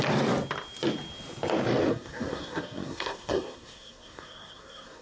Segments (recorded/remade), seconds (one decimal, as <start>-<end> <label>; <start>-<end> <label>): 0.0-1.9 recorded; 1.9-5.0 remade